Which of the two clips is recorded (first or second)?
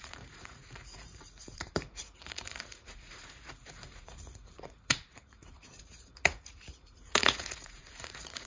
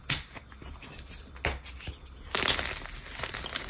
second